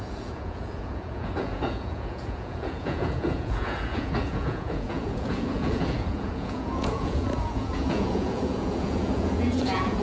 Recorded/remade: remade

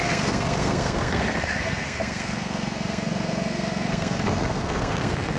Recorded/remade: remade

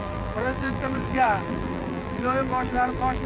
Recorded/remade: remade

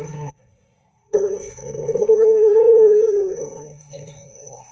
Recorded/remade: remade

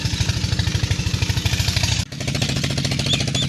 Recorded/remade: recorded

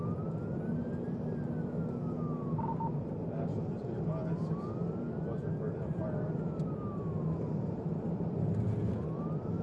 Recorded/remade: recorded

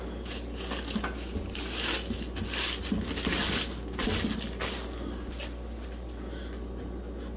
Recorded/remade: recorded